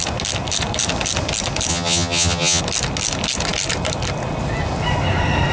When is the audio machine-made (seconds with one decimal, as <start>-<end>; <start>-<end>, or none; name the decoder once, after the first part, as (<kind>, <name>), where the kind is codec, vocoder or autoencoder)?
1.7-2.6 (vocoder, HiFi-GAN)

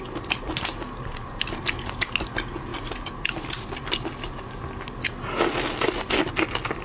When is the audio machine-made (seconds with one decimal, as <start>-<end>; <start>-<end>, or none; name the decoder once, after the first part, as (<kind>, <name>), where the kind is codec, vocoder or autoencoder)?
none

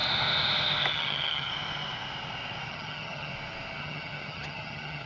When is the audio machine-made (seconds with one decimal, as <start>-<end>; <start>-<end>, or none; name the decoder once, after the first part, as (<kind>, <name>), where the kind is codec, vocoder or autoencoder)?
0.9-1.5 (vocoder, HiFi-GAN); 2.7-3.3; 3.8-5.1

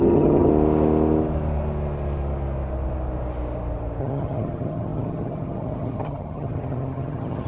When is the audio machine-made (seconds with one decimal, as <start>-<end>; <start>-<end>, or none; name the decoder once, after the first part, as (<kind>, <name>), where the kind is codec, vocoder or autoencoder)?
0.0-0.5 (vocoder, HiFi-GAN); 4.0-7.5

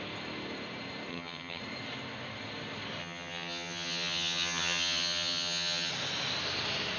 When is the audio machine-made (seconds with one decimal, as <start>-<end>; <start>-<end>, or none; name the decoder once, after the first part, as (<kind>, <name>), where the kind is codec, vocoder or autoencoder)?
1.1-1.6 (vocoder, HiFi-GAN); 3.0-5.9

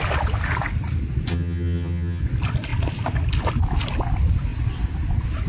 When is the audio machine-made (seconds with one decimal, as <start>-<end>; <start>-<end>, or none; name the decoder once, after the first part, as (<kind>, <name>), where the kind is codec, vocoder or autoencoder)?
1.3-2.2 (vocoder, HiFi-GAN)

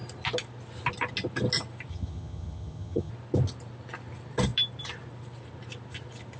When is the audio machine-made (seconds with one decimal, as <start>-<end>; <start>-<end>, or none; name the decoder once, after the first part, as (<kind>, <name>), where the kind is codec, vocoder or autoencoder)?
1.9-3.1 (vocoder, HiFi-GAN)